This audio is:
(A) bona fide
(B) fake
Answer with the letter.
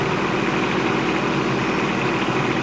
A